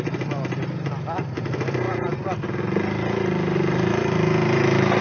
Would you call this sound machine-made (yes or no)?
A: no